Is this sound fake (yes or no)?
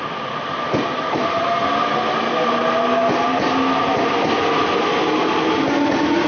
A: no